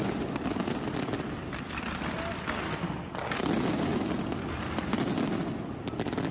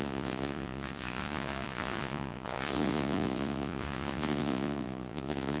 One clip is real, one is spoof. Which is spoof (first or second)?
second